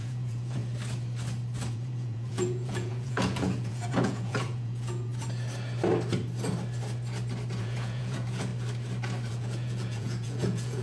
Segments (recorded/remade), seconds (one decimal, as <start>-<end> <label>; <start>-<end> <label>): 0.0-0.6 remade; 0.6-1.7 recorded; 1.7-5.1 remade; 5.1-7.6 recorded; 7.6-8.5 remade; 8.5-9.3 recorded; 9.3-10.8 remade